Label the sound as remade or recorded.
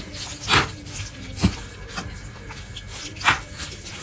recorded